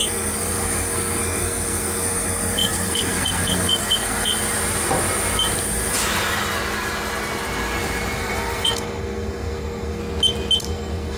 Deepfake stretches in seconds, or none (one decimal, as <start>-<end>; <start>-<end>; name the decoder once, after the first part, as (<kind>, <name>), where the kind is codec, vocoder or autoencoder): 0.0-4.3 (codec, SNAC); 8.2-10.0; 10.6-11.2